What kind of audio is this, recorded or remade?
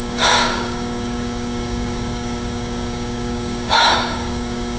remade